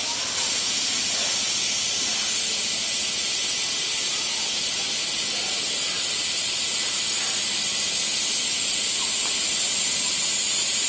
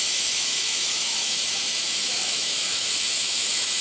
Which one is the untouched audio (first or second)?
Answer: first